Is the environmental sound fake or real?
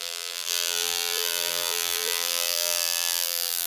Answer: fake